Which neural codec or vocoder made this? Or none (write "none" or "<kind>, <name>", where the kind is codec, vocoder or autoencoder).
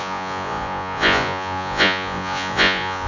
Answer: vocoder, Vocos